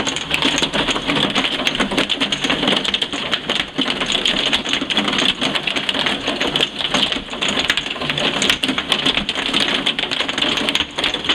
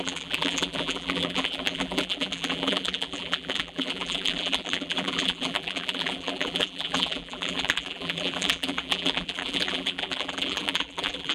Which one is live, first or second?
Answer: first